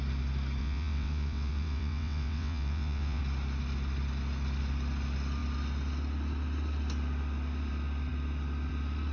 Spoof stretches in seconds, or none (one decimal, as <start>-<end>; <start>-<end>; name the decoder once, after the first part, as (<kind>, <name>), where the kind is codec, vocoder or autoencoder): 0.6-3.2 (vocoder, WaveNeXt)